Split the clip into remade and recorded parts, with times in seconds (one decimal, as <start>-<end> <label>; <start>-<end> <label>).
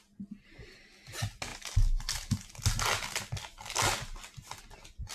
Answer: 0.0-5.1 recorded